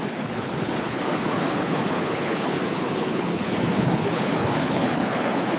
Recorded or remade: remade